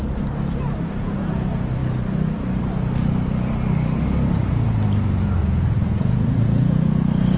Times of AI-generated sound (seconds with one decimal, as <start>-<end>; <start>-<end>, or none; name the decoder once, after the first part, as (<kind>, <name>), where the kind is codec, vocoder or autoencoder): 5.4-7.0 (vocoder, Vocos)

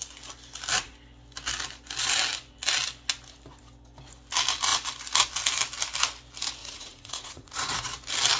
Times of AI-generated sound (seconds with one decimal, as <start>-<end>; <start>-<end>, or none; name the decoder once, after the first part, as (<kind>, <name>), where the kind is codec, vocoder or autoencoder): 6.6-7.9 (vocoder, Vocos)